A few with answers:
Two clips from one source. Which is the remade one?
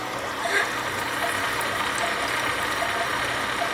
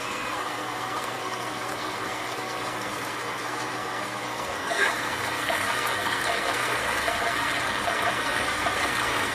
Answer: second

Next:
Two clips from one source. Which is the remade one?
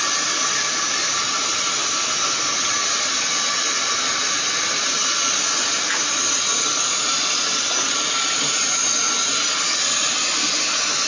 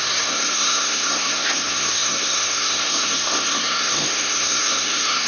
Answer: second